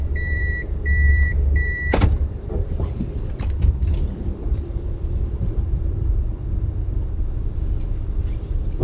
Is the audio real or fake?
fake